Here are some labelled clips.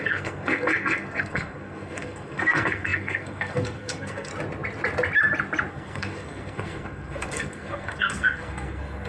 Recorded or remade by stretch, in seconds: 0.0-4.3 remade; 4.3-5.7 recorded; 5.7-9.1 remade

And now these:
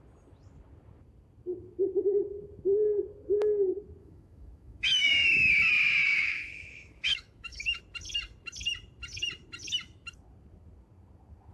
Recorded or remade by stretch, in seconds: 0.0-4.0 recorded; 4.0-5.5 remade; 5.5-6.1 recorded; 6.1-7.8 remade; 7.8-11.5 recorded

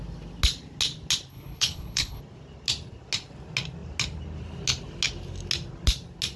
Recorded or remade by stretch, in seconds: 0.0-1.3 recorded; 1.3-2.2 remade; 2.2-6.4 recorded

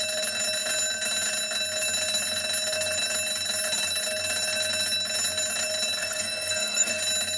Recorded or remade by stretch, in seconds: 0.0-6.0 recorded; 6.0-7.0 remade; 7.0-7.4 recorded

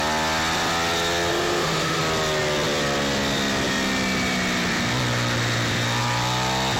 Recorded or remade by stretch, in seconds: 0.0-1.3 recorded; 1.3-2.0 remade; 2.0-6.8 recorded